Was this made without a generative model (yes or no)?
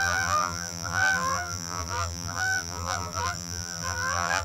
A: no